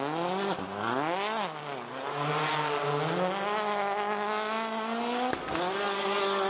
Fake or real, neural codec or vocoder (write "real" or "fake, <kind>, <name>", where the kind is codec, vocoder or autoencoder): real